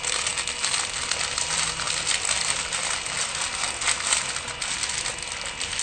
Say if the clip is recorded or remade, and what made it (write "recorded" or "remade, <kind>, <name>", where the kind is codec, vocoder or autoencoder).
recorded